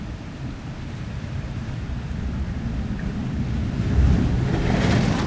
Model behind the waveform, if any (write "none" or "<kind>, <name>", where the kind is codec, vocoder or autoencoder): none